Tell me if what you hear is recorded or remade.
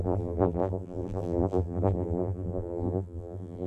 remade